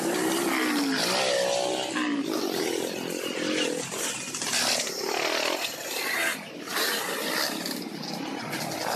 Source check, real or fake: real